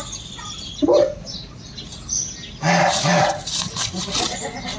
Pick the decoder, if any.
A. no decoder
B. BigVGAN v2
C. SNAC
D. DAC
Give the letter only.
A